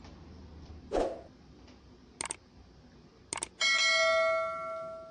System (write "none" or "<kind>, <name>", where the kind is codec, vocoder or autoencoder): none